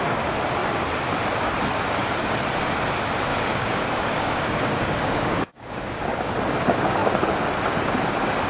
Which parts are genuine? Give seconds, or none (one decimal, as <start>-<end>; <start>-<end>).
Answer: 0.0-3.3; 6.3-8.5